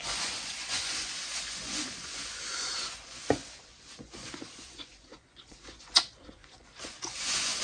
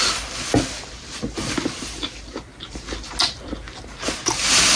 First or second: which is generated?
first